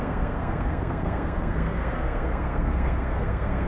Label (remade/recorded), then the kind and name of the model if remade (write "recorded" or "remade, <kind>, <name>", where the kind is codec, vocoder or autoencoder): remade, codec, SNAC